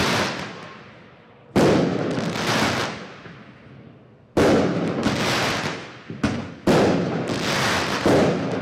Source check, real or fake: real